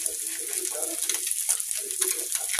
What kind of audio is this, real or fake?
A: real